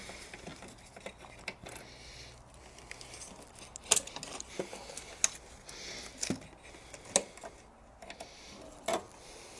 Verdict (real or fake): real